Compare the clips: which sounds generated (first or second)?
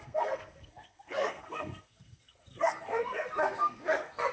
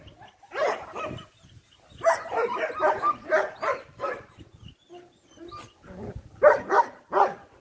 first